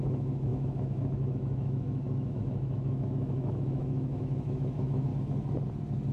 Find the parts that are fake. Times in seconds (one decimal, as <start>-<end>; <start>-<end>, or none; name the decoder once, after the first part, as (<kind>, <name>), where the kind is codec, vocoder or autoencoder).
0.0-5.1 (autoencoder, DAC-VAE)